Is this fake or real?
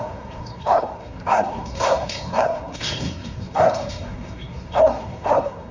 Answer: fake